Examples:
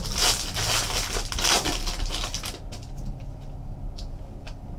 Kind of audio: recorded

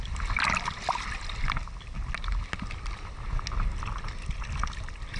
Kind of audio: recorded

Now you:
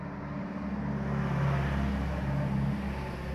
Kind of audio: recorded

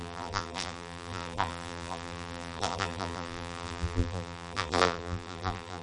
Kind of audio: remade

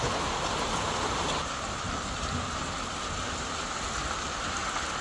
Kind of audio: recorded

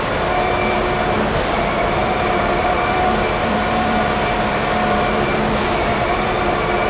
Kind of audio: remade